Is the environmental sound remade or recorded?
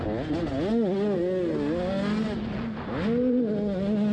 recorded